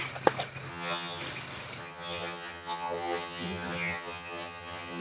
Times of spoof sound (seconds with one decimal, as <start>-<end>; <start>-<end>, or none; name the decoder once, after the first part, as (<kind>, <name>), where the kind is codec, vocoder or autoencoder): 0.7-1.2 (vocoder, HiFi-GAN); 1.8-5.0